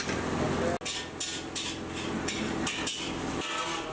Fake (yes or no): no